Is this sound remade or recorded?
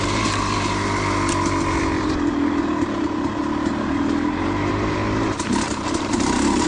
recorded